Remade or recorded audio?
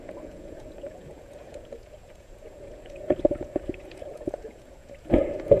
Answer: remade